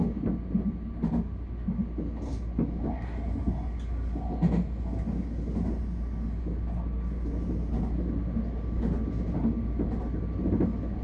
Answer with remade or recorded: recorded